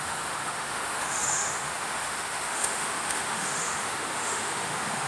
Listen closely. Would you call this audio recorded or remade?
remade